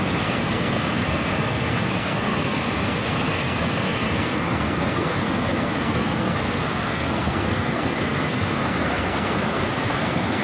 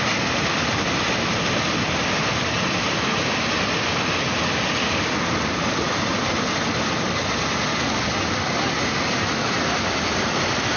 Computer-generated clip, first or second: first